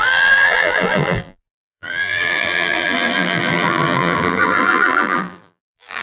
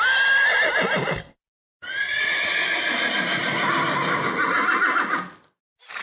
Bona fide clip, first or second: second